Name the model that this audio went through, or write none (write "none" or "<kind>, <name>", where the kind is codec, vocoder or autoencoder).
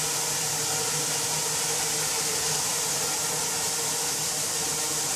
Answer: none